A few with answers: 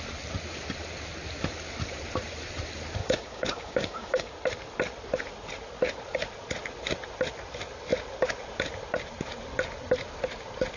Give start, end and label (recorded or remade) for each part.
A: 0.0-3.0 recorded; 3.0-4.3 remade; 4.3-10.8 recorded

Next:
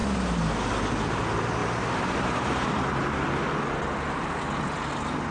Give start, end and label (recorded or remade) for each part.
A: 0.0-1.6 recorded; 1.6-3.3 remade; 3.3-5.3 recorded

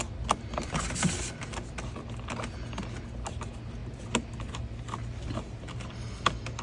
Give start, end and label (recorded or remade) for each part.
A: 0.0-6.6 recorded

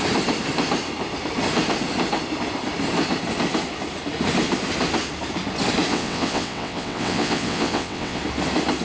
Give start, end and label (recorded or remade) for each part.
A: 0.0-5.9 recorded; 5.9-8.2 remade; 8.2-8.8 recorded

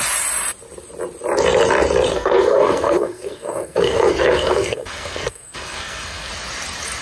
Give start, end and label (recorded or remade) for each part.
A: 0.0-2.1 recorded; 2.1-6.3 remade; 6.3-7.0 recorded